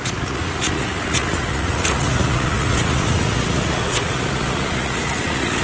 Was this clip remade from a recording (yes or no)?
yes